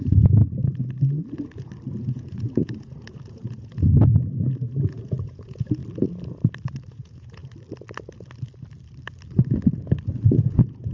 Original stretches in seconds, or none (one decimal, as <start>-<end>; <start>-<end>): 0.4-2.0; 5.8-6.9; 7.4-10.3